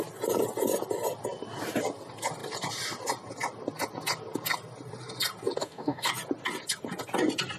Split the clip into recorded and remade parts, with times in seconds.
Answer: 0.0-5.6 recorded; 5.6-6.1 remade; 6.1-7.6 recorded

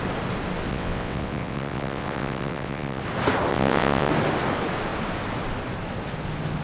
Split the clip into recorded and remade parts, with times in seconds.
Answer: 0.0-0.7 recorded; 0.7-3.0 remade; 3.0-3.5 recorded; 3.5-4.1 remade; 4.1-6.6 recorded

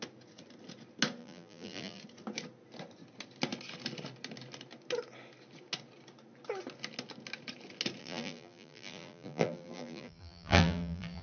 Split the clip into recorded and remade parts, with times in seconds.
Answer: 0.0-1.2 recorded; 1.2-2.0 remade; 2.0-8.0 recorded; 8.0-11.2 remade

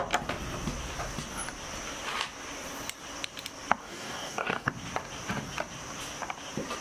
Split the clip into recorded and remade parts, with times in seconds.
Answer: 0.0-3.8 recorded; 3.8-4.7 remade; 4.7-6.8 recorded

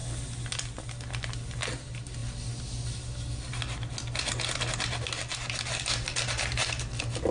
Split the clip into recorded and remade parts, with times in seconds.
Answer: 0.0-7.3 recorded